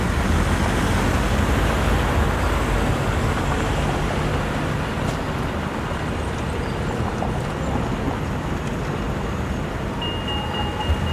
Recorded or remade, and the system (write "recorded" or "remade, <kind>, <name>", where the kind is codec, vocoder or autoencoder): recorded